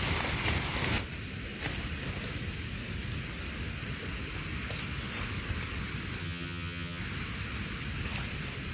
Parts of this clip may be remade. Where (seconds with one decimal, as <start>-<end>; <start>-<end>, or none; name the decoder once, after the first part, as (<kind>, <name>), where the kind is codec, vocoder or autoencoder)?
6.2-7.0 (vocoder, HiFi-GAN)